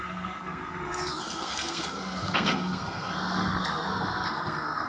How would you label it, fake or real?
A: fake